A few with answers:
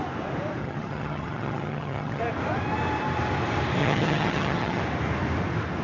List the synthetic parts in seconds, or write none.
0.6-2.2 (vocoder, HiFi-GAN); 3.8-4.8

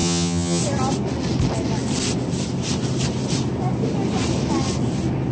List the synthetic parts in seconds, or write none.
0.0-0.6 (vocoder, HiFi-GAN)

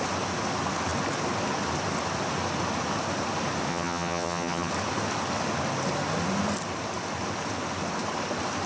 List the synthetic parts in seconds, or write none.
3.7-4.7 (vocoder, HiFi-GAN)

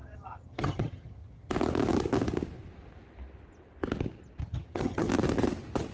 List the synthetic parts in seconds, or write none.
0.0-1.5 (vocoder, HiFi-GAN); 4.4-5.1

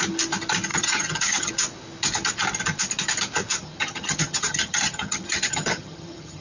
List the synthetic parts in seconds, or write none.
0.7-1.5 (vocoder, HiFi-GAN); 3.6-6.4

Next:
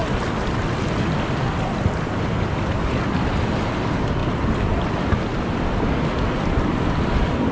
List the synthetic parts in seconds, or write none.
none

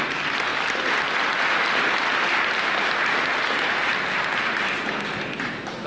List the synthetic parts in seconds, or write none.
none